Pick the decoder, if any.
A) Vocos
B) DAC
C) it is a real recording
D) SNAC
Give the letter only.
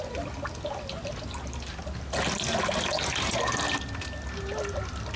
C